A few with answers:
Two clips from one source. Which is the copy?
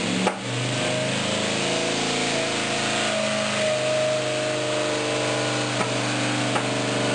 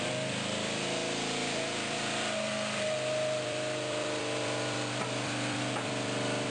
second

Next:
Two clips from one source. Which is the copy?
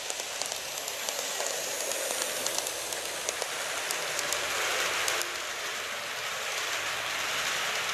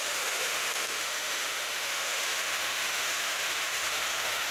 second